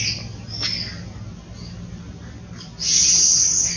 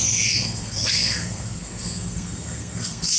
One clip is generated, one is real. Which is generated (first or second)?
second